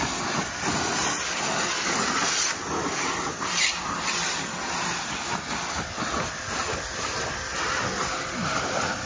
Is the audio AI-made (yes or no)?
no